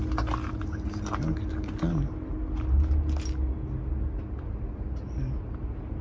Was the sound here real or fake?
real